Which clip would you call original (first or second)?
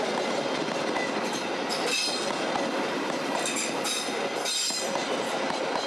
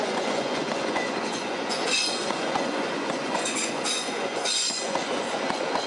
first